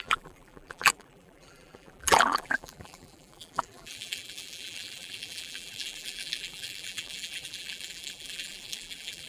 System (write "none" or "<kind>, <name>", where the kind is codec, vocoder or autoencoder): vocoder, BigVGAN v2